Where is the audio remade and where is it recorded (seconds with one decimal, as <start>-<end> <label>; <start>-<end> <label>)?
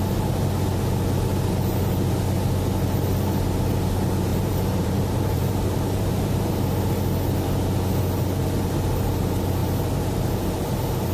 0.0-4.3 recorded; 4.3-6.5 remade; 6.5-11.1 recorded